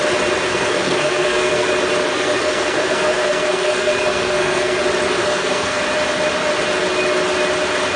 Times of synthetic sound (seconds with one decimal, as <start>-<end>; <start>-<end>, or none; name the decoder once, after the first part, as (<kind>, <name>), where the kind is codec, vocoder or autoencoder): 0.5-1.7 (codec, SNAC); 2.1-4.8; 5.2-5.8